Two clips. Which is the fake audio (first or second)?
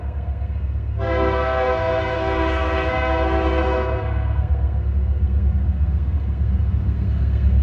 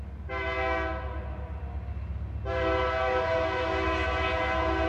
first